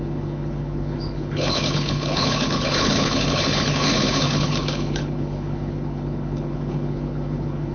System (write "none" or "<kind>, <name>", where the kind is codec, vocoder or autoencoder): codec, HILCodec